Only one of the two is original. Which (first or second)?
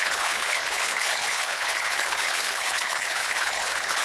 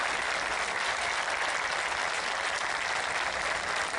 second